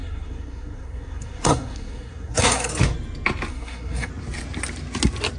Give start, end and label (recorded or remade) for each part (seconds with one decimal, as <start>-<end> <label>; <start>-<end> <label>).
0.0-2.7 remade; 2.7-3.5 recorded; 3.5-4.1 remade; 4.1-5.4 recorded